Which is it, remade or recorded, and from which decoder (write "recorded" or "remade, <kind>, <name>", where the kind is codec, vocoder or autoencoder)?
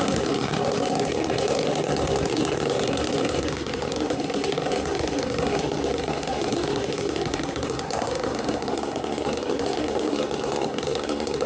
remade, codec, SNAC